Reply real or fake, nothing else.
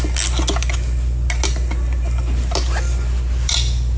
real